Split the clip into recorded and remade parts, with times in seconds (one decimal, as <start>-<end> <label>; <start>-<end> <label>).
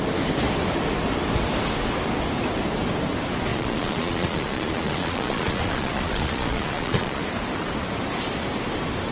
0.0-3.5 recorded; 3.5-7.2 remade; 7.2-9.1 recorded